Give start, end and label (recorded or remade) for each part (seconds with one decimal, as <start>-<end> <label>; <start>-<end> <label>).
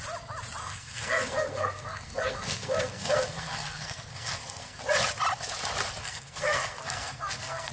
0.0-0.6 recorded; 0.6-4.8 remade; 4.8-6.0 recorded; 6.0-7.7 remade